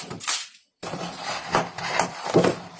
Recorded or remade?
recorded